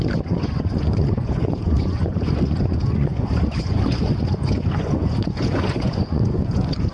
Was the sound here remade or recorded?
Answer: remade